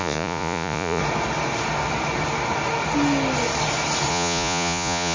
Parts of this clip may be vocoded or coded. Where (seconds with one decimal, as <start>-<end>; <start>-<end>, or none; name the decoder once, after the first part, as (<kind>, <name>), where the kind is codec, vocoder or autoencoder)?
0.0-1.0 (vocoder, Vocos); 4.1-5.1